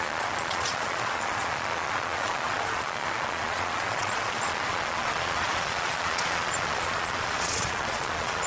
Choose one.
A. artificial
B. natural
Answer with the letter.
A